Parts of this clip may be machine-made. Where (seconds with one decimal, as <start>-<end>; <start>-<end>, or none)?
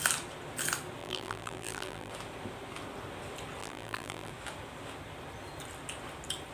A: 1.0-2.1; 3.6-4.3